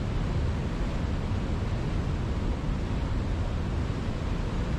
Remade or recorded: recorded